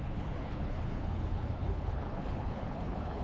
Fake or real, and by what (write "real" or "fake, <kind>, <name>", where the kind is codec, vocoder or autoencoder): fake, codec, HILCodec